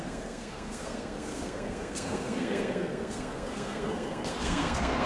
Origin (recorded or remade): remade